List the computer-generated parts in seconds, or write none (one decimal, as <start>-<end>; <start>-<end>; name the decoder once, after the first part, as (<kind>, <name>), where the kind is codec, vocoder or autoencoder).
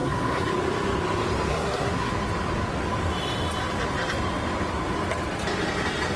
0.0-0.5 (codec, SNAC); 1.5-2.1